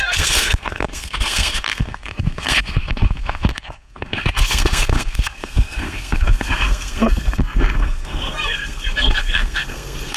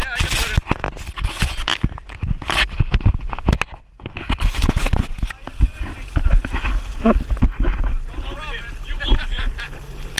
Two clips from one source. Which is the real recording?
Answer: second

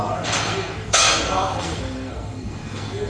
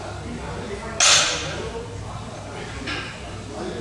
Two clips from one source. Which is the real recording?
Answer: second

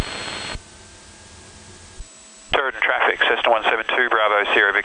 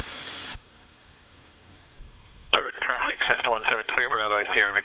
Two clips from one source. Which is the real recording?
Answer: first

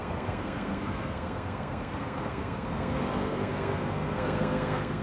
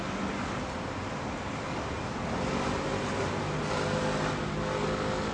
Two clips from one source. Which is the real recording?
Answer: second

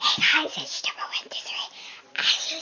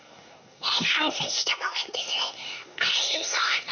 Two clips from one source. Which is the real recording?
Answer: first